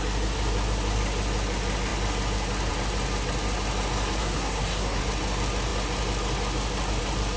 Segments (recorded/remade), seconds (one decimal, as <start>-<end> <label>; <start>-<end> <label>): 0.0-4.2 recorded; 4.2-5.0 remade; 5.0-7.4 recorded